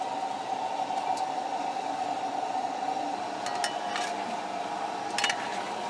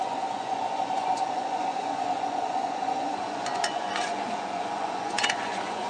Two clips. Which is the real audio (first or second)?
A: first